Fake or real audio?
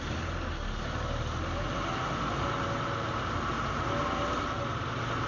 real